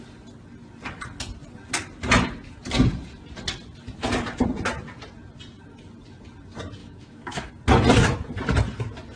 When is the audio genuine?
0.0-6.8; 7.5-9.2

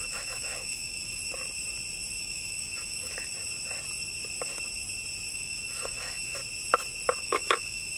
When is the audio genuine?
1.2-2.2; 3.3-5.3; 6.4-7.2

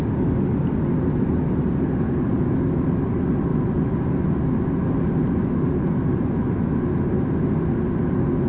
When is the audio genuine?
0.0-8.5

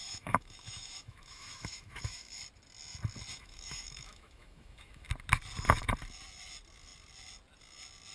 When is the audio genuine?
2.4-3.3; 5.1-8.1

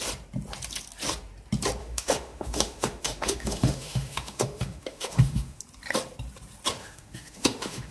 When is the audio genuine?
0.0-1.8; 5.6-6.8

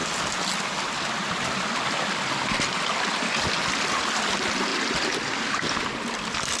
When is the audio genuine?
0.0-6.6

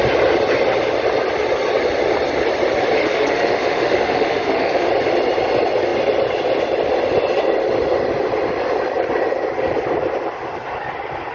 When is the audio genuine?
0.0-3.0; 4.9-11.3